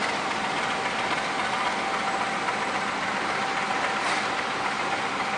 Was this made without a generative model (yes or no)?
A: yes